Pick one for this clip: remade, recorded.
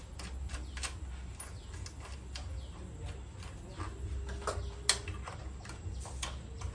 recorded